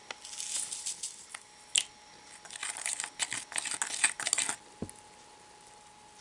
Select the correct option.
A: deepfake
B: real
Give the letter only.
B